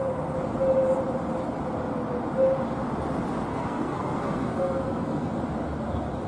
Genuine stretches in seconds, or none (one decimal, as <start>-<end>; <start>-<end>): 0.0-3.5; 5.3-6.3